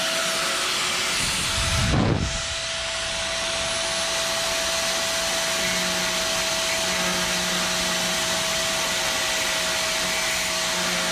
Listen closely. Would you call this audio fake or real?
real